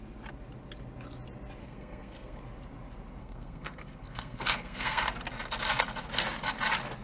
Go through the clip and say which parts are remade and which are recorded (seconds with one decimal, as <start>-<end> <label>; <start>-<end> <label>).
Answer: 0.0-1.6 recorded; 1.6-2.4 remade; 2.4-3.2 recorded; 3.2-5.0 remade; 5.0-7.0 recorded